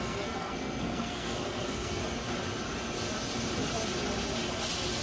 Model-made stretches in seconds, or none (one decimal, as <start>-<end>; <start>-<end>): 0.0-2.0